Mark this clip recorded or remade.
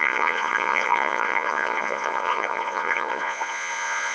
remade